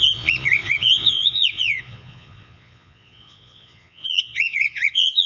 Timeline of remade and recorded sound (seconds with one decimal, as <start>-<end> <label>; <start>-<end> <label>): 0.0-5.3 remade